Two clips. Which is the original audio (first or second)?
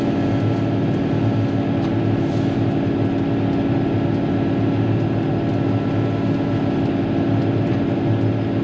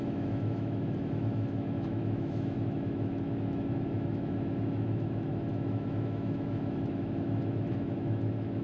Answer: first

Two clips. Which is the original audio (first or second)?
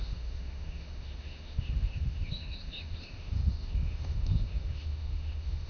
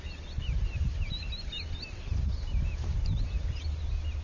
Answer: second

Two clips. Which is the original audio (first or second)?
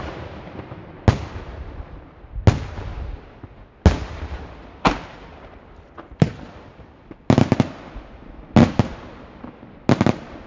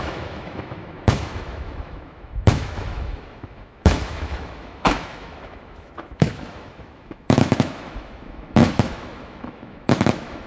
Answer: first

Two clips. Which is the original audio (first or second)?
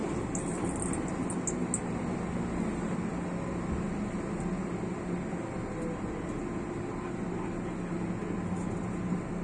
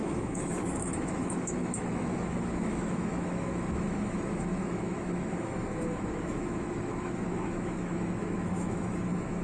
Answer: first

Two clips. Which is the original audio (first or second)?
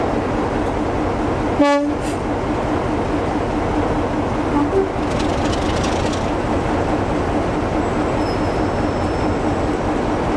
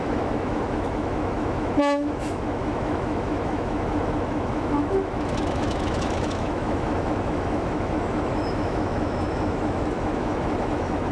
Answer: first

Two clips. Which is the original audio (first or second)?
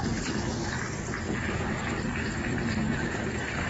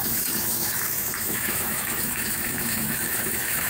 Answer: first